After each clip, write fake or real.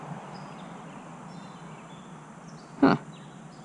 real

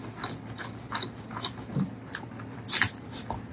real